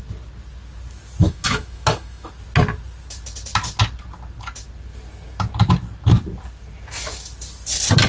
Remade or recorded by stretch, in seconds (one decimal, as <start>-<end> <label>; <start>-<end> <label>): 0.0-1.2 recorded; 1.2-2.3 remade; 2.3-8.1 recorded